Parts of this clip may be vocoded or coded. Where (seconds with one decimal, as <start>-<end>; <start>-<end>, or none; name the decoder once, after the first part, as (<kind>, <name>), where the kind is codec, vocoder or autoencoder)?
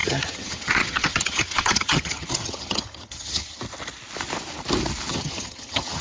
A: 0.0-3.6 (vocoder, HiFi-GAN); 5.1-6.0